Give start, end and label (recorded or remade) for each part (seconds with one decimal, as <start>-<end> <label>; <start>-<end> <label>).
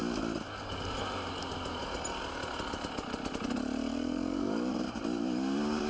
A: 0.0-3.9 recorded; 3.9-4.7 remade; 4.7-5.9 recorded